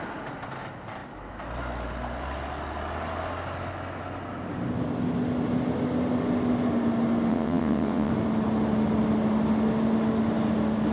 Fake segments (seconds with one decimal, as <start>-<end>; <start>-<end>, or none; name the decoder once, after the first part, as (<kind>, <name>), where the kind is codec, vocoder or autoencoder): 7.3-8.1 (vocoder, WaveNeXt)